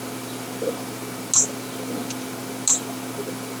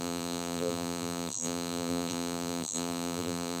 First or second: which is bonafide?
first